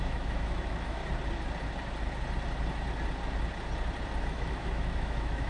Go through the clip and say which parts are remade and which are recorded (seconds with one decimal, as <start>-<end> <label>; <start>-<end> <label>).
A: 0.0-1.0 remade; 1.0-4.2 recorded; 4.2-5.5 remade